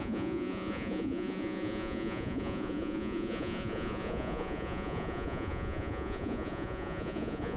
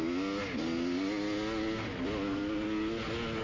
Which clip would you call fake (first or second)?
first